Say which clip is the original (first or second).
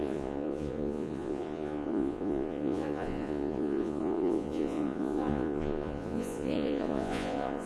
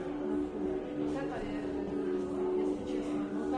second